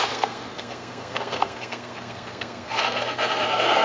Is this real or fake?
fake